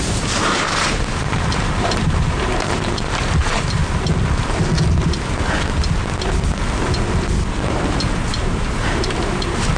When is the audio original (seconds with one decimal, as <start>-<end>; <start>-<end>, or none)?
3.8-7.5